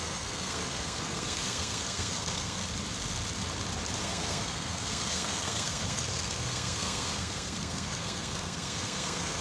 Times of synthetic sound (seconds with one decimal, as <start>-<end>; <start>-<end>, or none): 0.0-2.6; 4.0-9.4